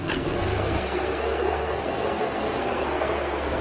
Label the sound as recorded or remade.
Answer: remade